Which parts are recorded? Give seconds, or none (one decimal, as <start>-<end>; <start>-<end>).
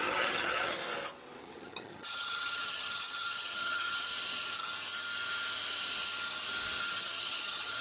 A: 0.8-1.4; 4.1-6.8